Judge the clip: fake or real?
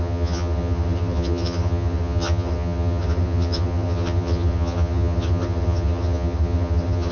fake